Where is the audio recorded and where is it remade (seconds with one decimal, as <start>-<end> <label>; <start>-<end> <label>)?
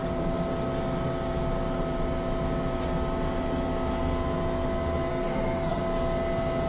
0.0-5.1 recorded; 5.1-5.8 remade; 5.8-6.7 recorded